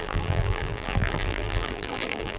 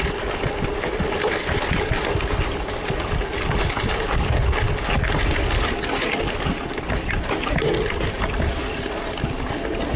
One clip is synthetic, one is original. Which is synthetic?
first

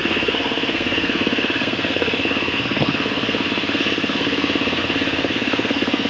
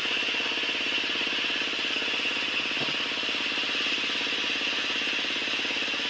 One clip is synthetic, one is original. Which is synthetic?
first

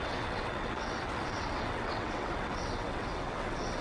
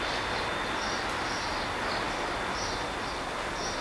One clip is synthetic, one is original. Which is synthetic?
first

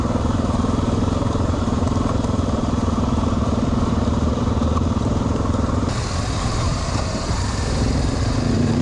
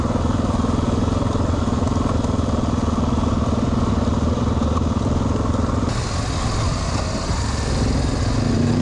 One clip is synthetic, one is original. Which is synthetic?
first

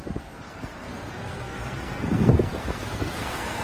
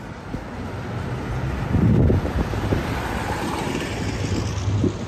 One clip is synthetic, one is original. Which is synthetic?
first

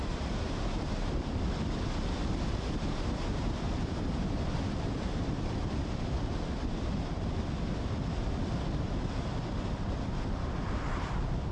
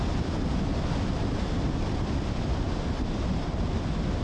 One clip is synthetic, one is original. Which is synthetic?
first